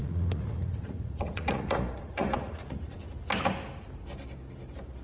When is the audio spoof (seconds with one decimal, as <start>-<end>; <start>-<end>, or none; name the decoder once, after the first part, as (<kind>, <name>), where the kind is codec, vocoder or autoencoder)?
0.0-3.0 (vocoder, Vocos)